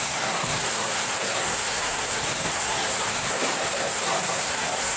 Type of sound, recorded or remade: remade